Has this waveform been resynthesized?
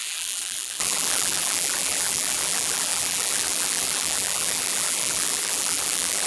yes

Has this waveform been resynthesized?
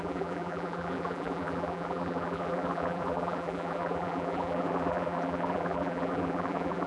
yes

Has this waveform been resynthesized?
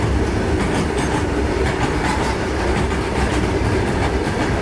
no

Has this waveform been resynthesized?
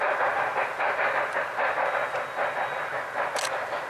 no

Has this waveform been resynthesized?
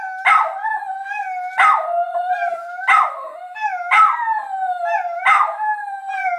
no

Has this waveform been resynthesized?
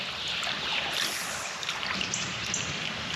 no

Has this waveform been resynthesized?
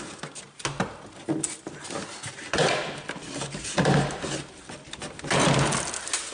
no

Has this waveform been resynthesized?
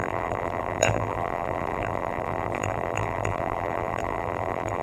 yes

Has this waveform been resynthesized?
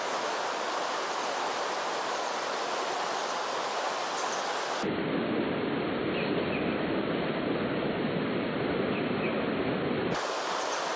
no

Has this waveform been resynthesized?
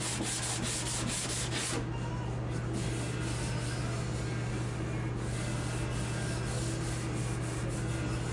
no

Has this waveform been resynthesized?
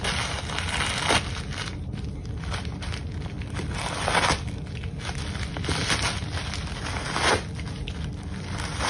no